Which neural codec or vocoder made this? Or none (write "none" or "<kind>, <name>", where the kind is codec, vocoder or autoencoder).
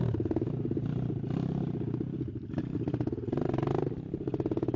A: none